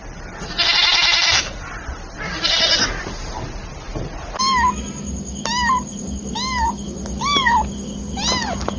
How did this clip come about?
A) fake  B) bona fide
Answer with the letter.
B